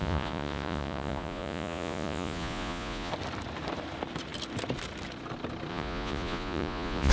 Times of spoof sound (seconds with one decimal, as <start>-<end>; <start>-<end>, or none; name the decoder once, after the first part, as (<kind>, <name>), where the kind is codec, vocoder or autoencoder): 0.0-3.1 (vocoder, Vocos); 5.7-7.1